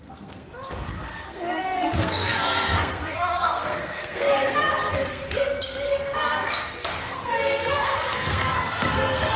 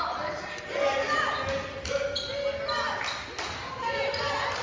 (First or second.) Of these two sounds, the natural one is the second